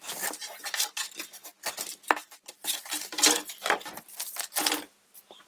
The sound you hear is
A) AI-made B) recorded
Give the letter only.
B